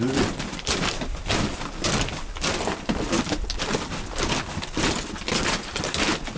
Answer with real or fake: real